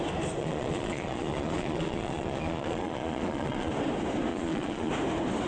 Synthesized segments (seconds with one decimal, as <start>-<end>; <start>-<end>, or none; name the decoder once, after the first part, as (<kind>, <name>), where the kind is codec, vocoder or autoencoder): 0.4-3.7 (vocoder, Vocos); 4.3-4.9